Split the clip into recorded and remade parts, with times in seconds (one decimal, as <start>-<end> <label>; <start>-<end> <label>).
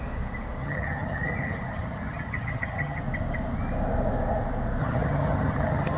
0.0-0.6 recorded; 0.6-3.0 remade; 3.0-4.8 recorded; 4.8-6.0 remade